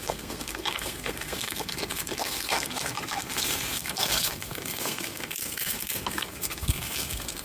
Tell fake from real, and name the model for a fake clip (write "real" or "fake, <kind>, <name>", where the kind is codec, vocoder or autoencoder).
fake, codec, SNAC